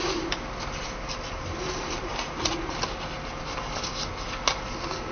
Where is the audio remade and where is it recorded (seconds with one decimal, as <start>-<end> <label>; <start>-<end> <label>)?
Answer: 0.0-0.8 recorded; 0.8-2.4 remade; 2.4-5.1 recorded